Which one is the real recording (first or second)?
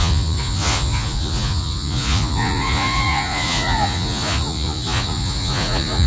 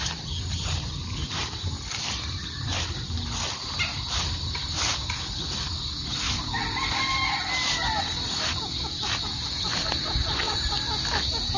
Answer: second